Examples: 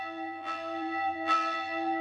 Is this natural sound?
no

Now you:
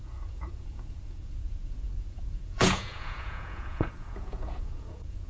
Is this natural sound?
no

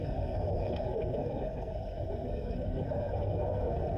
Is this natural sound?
no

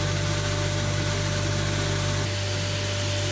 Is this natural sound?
yes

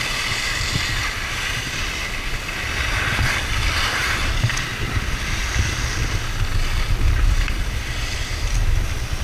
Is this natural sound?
yes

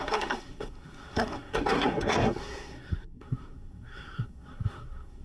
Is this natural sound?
no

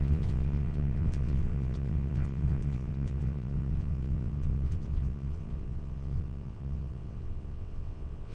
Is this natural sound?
no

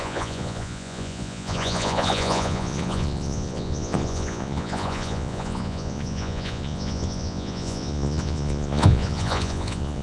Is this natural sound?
no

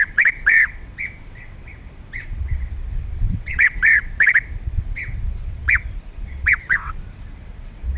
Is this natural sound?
no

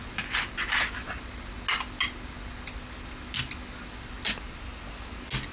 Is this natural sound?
yes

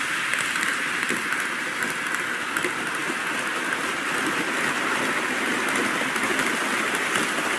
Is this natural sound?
yes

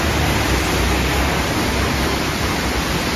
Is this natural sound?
yes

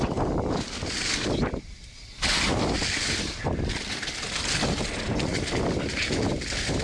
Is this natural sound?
yes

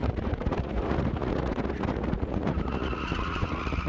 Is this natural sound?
no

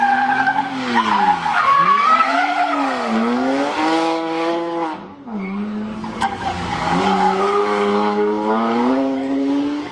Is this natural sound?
no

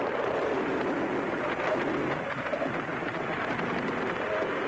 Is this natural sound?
yes